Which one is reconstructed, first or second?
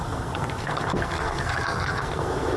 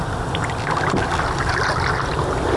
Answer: first